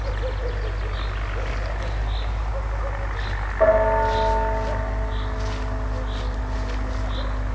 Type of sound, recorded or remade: recorded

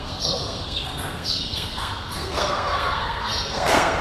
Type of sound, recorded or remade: remade